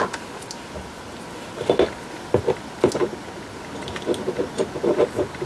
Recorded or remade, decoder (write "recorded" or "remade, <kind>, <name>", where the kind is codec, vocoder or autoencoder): recorded